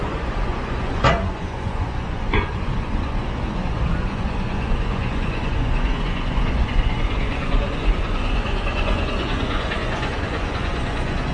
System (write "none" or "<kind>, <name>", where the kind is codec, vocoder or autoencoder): vocoder, Vocos